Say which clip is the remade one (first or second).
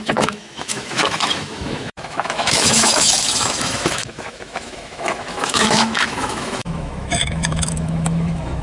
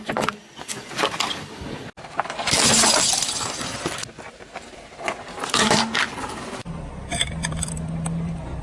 first